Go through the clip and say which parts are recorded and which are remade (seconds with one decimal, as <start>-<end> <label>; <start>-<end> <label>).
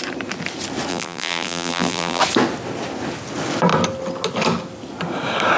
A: 0.0-0.9 recorded; 0.9-2.2 remade; 2.2-5.6 recorded